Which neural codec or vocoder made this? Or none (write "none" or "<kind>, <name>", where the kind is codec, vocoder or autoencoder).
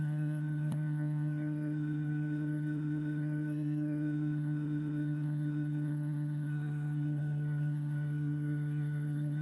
codec, SNAC